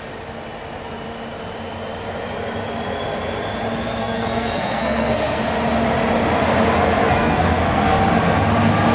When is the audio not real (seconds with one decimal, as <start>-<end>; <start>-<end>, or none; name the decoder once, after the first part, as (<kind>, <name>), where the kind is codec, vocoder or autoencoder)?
4.0-5.4 (codec, SNAC); 7.0-8.0